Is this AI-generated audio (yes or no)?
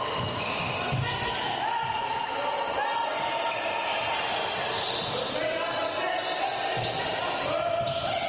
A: no